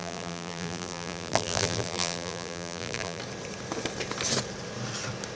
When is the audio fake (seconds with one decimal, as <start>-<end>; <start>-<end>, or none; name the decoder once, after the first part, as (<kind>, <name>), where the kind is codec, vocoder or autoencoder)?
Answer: 0.0-3.2 (vocoder, BigVGAN v2)